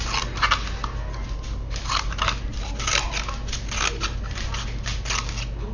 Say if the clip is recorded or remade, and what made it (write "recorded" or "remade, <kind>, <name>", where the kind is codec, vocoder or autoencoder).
recorded